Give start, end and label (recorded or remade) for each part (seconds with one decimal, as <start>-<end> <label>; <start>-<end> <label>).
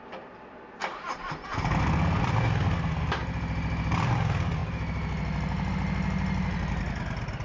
0.0-7.4 recorded